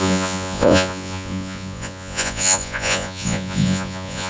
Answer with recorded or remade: remade